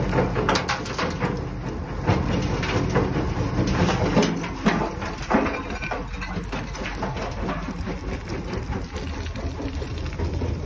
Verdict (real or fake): real